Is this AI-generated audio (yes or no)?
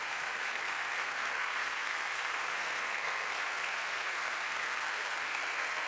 yes